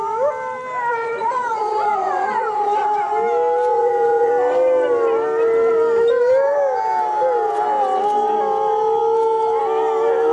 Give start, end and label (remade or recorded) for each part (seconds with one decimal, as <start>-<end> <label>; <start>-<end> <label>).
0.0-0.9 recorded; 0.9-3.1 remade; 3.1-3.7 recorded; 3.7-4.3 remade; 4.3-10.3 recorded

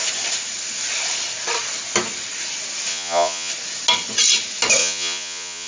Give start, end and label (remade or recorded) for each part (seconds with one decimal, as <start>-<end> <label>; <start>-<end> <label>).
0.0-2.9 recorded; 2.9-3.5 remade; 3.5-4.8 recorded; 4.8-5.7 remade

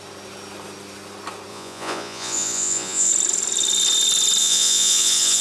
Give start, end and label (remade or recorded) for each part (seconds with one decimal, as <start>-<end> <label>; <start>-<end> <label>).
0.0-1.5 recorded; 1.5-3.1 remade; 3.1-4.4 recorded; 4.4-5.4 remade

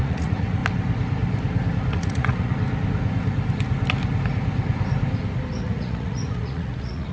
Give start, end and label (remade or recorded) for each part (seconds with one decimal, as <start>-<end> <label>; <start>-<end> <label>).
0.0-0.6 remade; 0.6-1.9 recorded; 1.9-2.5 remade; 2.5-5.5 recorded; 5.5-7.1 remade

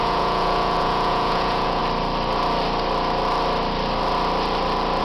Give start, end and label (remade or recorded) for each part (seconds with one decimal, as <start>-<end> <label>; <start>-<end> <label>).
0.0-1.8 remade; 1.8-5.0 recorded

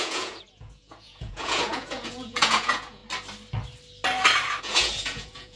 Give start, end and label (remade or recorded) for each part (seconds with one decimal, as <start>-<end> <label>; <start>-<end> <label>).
0.0-3.0 remade; 3.0-4.6 recorded; 4.6-5.6 remade

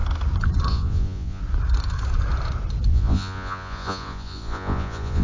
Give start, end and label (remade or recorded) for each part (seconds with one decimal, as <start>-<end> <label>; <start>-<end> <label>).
0.0-0.7 recorded; 0.7-1.4 remade; 1.4-2.9 recorded; 2.9-5.2 remade

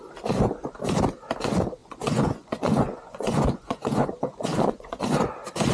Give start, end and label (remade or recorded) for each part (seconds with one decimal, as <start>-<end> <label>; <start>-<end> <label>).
0.0-1.8 recorded; 1.8-5.0 remade; 5.0-5.7 recorded